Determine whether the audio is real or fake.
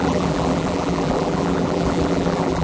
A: fake